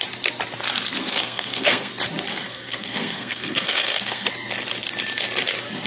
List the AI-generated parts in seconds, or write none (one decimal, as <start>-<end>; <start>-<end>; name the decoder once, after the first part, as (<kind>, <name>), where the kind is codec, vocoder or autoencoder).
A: 1.0-1.9 (codec, SNAC); 2.3-4.3